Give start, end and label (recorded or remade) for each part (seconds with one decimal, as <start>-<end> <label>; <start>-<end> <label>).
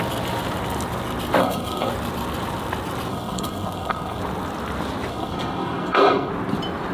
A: 0.0-1.4 recorded; 1.4-1.9 remade; 1.9-3.1 recorded; 3.1-4.2 remade; 4.2-5.1 recorded; 5.1-6.3 remade; 6.3-6.9 recorded